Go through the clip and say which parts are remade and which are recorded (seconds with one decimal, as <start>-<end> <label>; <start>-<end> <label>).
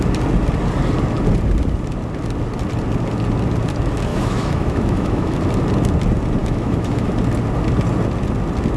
0.0-4.1 recorded; 4.1-5.4 remade; 5.4-6.4 recorded; 6.4-7.1 remade; 7.1-8.8 recorded